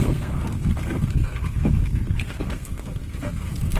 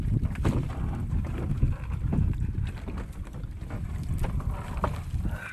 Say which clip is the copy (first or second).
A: first